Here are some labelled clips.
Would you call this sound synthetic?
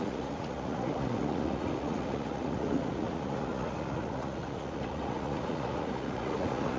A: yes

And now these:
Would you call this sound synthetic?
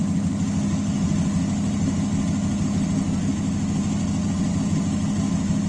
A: no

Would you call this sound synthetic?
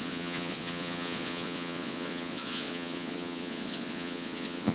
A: yes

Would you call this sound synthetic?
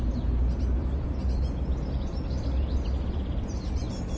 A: no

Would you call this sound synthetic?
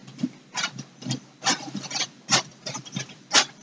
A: no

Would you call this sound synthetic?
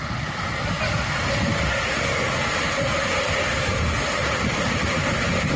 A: no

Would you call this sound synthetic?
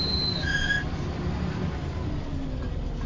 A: no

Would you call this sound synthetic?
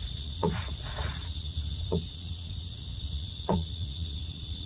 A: yes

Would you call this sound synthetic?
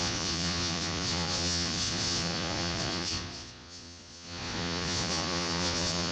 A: yes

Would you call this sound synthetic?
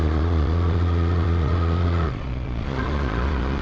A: yes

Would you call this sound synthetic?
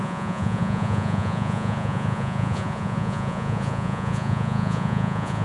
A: yes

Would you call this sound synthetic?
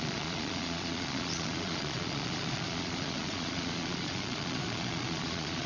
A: yes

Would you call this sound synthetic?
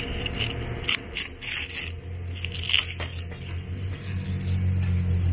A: no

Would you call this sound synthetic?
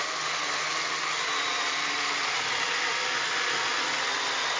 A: no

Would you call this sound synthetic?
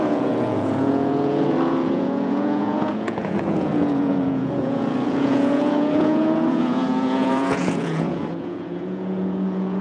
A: yes